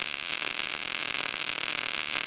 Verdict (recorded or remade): recorded